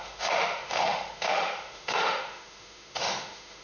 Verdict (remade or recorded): remade